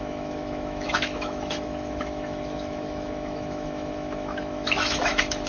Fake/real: fake